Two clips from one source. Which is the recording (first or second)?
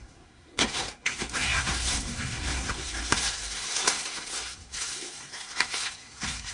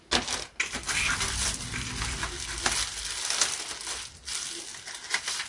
second